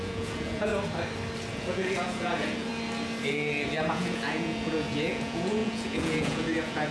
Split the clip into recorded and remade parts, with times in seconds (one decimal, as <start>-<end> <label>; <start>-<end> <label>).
0.0-0.7 remade; 0.7-1.5 recorded; 1.5-2.7 remade; 2.7-3.9 recorded; 3.9-6.9 remade